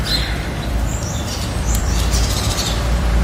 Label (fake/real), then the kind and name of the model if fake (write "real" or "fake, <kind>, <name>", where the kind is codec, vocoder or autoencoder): fake, vocoder, BigVGAN v2